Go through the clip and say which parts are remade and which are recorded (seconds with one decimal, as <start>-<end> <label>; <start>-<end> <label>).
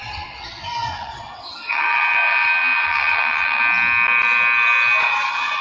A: 0.0-3.6 remade; 3.6-5.0 recorded; 5.0-5.6 remade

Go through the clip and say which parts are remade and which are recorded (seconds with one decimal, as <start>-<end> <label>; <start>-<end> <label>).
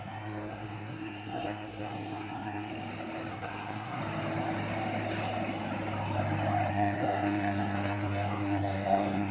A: 0.0-2.7 remade; 2.7-3.3 recorded; 3.3-4.0 remade; 4.0-6.7 recorded; 6.7-9.3 remade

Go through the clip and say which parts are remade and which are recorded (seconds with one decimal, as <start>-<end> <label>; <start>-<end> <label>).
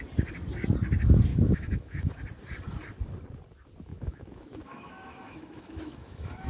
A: 0.0-1.3 recorded; 1.3-2.1 remade; 2.1-3.9 recorded; 3.9-6.5 remade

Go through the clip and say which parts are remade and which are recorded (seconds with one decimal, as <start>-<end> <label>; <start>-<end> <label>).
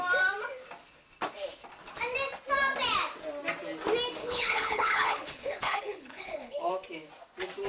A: 0.0-4.2 recorded; 4.2-6.7 remade; 6.7-7.7 recorded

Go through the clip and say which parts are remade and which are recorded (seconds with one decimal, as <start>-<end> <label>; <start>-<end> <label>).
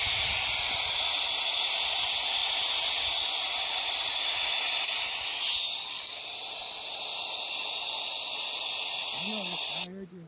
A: 0.0-10.3 recorded